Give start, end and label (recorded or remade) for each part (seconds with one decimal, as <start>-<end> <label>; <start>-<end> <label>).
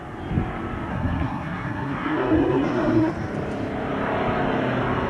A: 0.0-0.9 recorded; 0.9-3.1 remade; 3.1-5.1 recorded